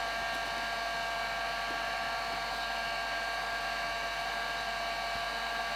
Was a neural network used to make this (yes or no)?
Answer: no